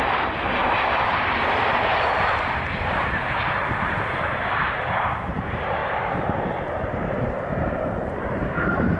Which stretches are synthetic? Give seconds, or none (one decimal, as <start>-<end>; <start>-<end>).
0.0-9.0